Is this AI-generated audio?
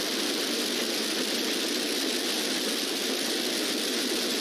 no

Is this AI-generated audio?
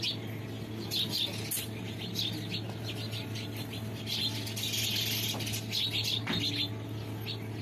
no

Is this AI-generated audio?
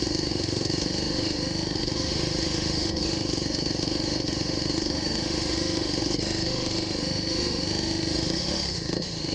yes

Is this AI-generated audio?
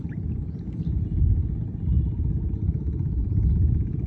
no